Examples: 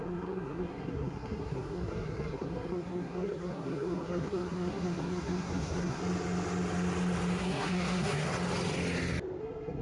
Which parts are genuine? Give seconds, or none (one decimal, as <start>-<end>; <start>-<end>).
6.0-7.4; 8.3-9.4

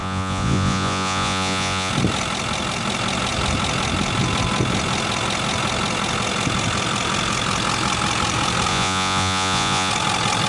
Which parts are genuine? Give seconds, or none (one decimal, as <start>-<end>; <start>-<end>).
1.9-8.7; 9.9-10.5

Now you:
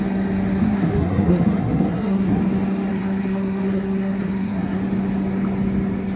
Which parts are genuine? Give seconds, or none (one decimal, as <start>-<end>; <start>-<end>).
0.0-0.6; 2.4-2.9; 4.8-6.2

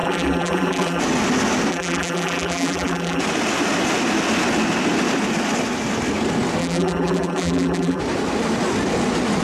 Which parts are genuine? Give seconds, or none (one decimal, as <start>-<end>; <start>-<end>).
1.0-1.7; 3.2-6.6; 8.0-9.4

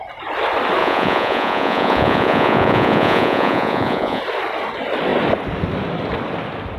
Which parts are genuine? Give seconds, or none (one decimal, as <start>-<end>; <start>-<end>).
0.0-0.8; 4.2-6.8

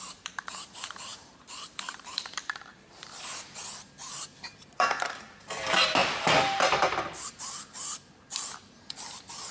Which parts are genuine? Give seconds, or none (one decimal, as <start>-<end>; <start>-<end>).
3.6-4.1

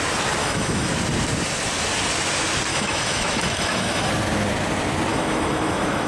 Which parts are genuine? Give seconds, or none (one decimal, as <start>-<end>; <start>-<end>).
0.0-0.4; 0.9-2.7; 4.1-5.1